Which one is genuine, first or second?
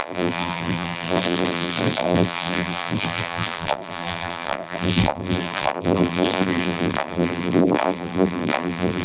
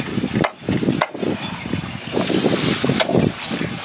second